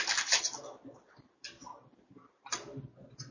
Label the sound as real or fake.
real